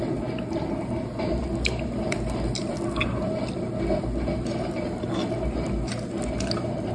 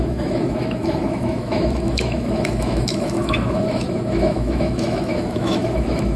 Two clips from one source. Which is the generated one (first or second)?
second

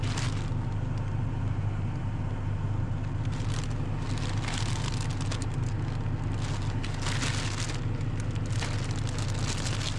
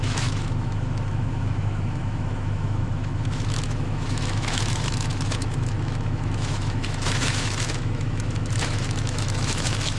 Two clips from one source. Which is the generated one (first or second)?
second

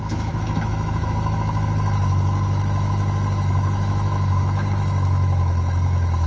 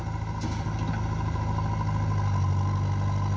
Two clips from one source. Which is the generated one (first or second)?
first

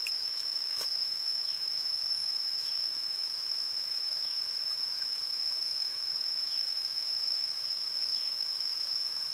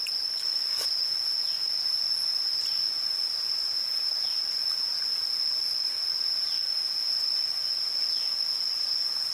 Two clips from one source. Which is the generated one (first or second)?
first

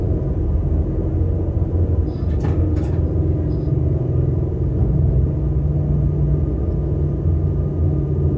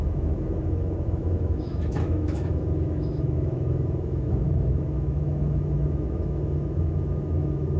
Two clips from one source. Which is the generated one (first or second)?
second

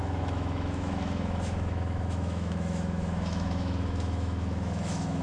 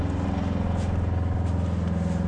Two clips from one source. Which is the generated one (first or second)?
first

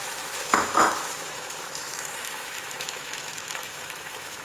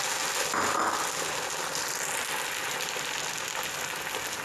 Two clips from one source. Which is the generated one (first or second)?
first